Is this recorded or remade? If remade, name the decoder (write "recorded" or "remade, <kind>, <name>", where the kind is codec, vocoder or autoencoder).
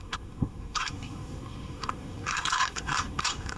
remade, codec, SNAC